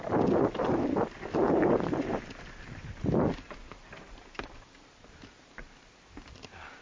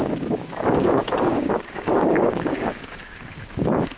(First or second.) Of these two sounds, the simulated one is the second